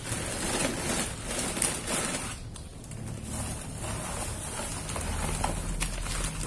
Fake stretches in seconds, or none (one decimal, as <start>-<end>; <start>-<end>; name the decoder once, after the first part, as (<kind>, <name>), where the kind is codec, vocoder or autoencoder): none

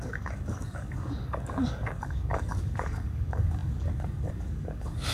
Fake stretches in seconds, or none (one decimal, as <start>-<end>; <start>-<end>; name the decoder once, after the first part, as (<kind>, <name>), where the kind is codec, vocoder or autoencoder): 0.0-5.1 (codec, DAC)

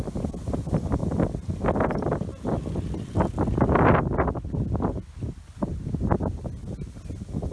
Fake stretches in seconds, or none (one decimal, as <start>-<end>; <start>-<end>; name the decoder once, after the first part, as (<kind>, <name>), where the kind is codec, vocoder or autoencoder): none